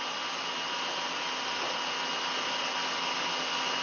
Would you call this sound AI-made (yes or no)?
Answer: no